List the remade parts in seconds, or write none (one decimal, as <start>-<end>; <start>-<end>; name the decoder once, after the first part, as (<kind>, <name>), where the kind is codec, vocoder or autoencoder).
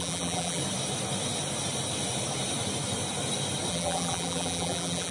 0.0-0.6 (vocoder, BigVGAN v2); 3.7-5.1